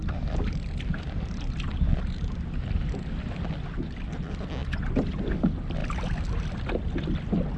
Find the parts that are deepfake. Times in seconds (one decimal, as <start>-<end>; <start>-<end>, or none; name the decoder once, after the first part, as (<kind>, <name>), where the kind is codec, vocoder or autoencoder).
none